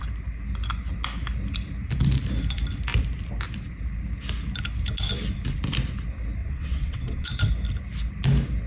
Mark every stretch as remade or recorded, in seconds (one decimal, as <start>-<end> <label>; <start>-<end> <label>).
0.0-6.4 recorded; 6.4-7.3 remade; 7.3-8.7 recorded